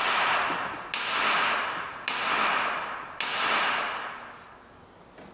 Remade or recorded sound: recorded